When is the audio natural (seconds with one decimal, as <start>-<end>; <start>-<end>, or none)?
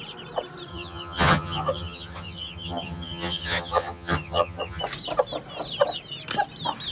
0.0-0.7; 4.8-6.9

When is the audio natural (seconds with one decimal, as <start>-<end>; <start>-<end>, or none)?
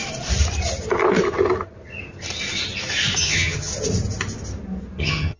0.0-3.2; 3.7-5.0